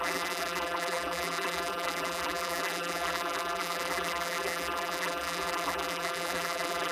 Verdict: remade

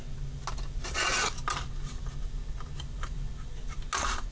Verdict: recorded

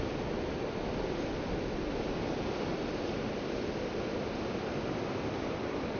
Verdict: remade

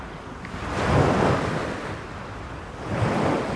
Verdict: recorded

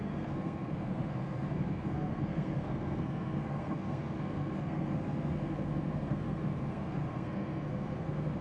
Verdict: remade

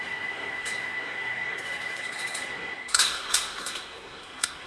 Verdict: remade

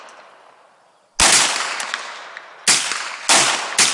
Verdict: recorded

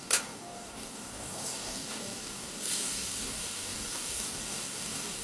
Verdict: remade